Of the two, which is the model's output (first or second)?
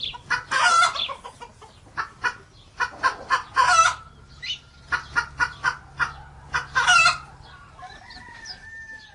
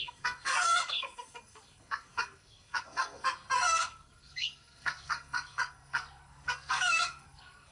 second